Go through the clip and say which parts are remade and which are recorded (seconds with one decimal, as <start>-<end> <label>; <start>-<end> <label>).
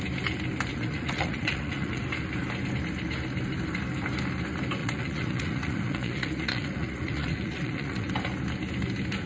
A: 0.0-0.7 recorded; 0.7-2.0 remade; 2.0-4.8 recorded; 4.8-8.1 remade; 8.1-9.3 recorded